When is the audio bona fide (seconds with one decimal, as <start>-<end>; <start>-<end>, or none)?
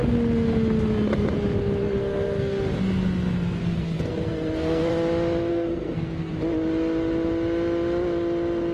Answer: 0.0-1.8; 2.6-3.6; 4.9-5.5; 6.3-8.7